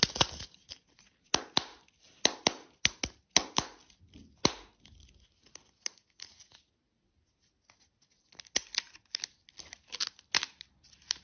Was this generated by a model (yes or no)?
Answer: no